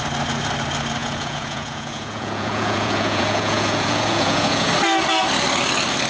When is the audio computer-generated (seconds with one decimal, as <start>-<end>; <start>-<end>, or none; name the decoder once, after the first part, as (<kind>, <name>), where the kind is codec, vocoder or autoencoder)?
1.0-4.7 (vocoder, Vocos)